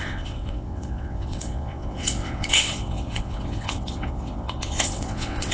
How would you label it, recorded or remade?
remade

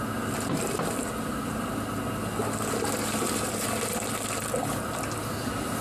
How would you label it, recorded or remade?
recorded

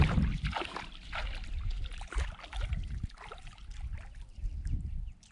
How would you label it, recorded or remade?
remade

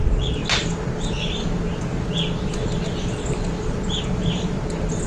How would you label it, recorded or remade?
recorded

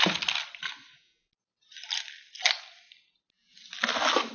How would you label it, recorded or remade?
recorded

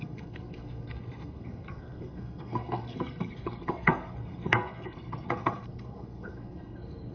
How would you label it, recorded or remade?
remade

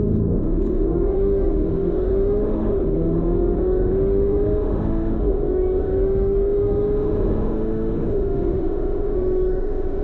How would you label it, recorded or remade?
remade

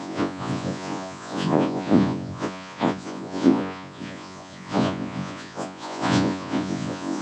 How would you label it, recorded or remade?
remade